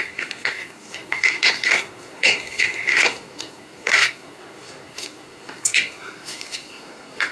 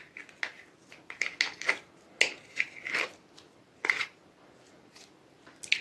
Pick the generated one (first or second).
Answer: first